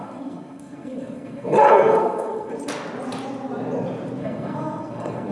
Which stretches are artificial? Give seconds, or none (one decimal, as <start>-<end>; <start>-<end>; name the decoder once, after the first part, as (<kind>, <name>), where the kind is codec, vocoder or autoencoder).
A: 0.0-2.5 (codec, SNAC); 4.2-5.3